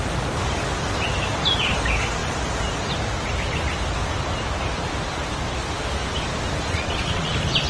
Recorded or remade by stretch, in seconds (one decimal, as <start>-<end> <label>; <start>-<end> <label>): 0.0-6.7 recorded; 6.7-7.3 remade; 7.3-7.7 recorded